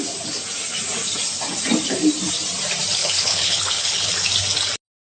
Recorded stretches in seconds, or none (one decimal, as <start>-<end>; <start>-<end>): 0.0-3.0; 4.1-5.0